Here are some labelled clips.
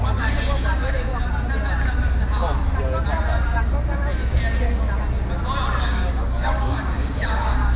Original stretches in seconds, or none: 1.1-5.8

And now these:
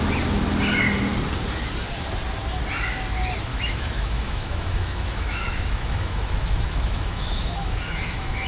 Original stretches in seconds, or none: 0.0-3.5

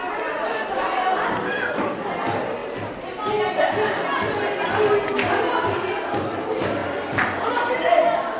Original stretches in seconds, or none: 0.0-8.4

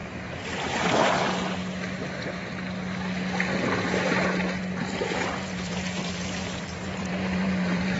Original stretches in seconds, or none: 0.0-4.8

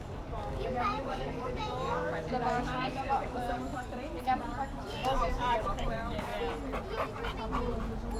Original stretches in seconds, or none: 6.3-8.2